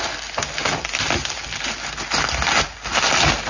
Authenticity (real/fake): real